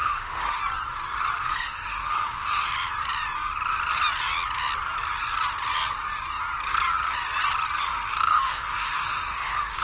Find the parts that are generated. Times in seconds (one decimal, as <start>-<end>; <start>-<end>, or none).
0.0-0.6; 1.5-2.7; 7.8-9.8